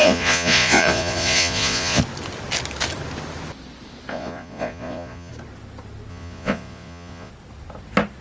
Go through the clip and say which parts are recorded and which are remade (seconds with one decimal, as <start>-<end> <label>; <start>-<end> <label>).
0.0-2.0 remade; 2.0-4.1 recorded; 4.1-5.3 remade; 5.3-6.1 recorded; 6.1-7.3 remade; 7.3-8.2 recorded